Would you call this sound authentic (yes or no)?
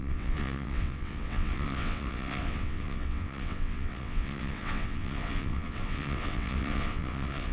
no